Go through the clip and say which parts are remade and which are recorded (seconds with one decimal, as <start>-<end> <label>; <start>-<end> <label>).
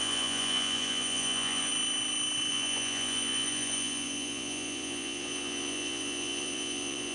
0.0-1.7 remade; 1.7-2.5 recorded; 2.5-7.1 remade